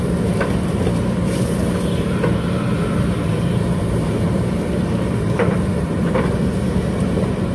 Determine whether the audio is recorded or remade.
remade